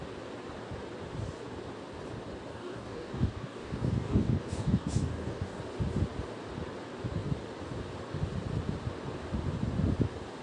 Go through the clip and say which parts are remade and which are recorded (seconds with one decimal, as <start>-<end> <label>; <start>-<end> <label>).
0.0-2.5 recorded; 2.5-5.6 remade; 5.6-10.4 recorded